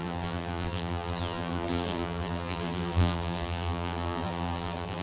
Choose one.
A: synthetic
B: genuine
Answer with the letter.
A